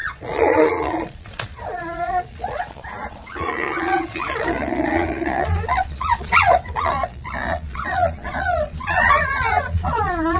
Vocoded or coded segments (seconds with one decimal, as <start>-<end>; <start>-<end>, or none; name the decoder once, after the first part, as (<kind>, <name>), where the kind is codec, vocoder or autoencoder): 0.0-10.4 (vocoder, Vocos)